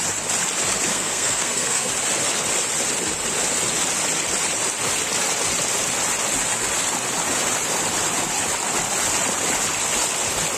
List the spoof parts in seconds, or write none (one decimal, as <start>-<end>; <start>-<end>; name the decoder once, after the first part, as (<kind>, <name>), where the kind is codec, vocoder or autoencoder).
0.9-1.9 (codec, SNAC)